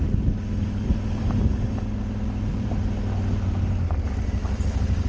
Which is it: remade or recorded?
recorded